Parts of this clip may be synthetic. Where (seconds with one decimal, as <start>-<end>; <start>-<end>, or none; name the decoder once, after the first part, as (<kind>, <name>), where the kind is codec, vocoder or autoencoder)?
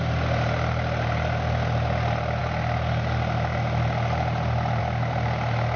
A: none